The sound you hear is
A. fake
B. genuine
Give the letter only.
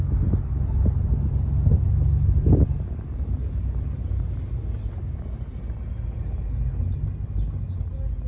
B